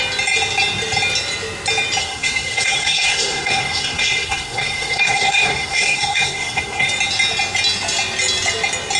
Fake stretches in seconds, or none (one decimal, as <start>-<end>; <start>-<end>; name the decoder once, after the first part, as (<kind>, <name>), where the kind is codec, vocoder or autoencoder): 2.0-6.9 (codec, SNAC)